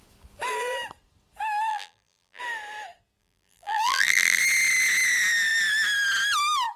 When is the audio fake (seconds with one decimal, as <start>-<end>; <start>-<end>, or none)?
1.7-2.4; 3.2-4.4